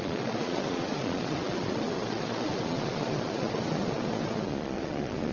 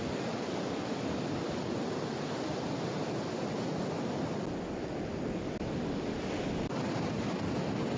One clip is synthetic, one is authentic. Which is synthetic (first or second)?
first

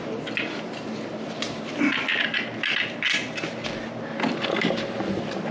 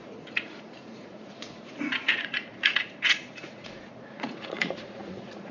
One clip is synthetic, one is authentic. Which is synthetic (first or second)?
second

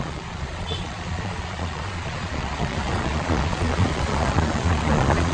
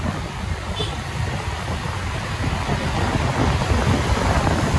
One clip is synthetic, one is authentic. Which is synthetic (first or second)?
first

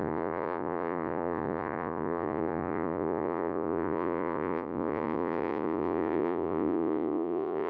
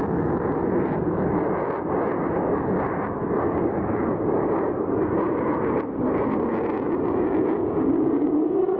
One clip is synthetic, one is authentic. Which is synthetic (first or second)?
first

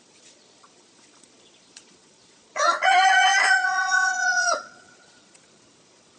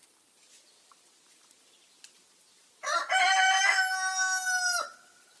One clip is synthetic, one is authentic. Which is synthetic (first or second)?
first